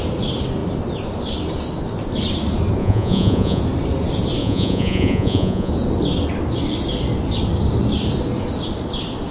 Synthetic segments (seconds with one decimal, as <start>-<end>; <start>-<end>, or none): 2.8-3.6; 4.4-5.7